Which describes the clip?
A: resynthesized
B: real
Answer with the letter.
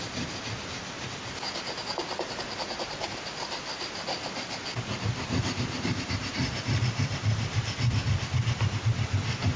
B